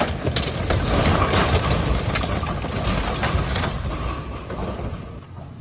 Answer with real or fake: real